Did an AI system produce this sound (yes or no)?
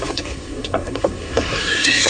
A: yes